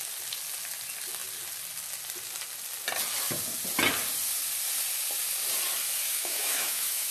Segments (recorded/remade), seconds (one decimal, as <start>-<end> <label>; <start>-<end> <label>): 0.0-6.0 recorded; 6.0-7.1 remade